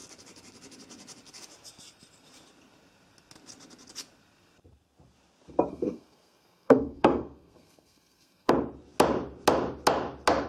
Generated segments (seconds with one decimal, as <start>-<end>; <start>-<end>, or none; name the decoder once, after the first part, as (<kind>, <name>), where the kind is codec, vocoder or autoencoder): 5.7-8.5 (codec, SNAC)